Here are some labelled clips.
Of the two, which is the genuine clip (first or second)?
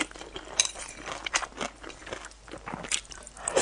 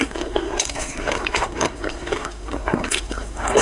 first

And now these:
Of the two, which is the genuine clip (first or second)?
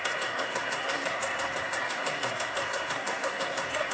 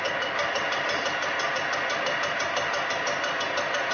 second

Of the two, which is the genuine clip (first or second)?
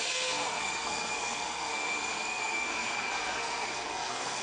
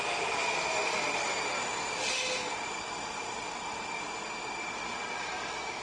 second